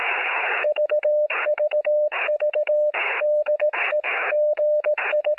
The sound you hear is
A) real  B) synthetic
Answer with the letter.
B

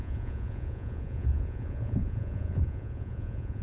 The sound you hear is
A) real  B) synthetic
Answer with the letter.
B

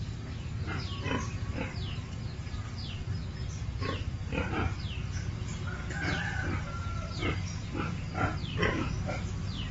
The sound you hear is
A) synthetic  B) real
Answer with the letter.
B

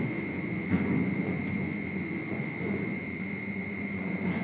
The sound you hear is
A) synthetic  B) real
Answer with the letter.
A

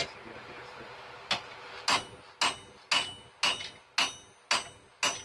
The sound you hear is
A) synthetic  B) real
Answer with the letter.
B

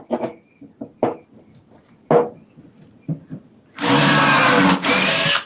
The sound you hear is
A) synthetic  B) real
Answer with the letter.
B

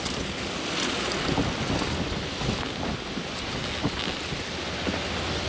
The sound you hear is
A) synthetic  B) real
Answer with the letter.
B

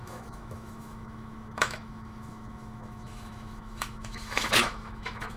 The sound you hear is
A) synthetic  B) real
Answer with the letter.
A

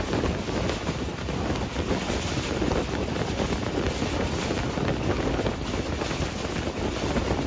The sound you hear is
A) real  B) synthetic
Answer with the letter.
A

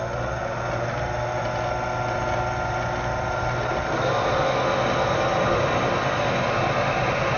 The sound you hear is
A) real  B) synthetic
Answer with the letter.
A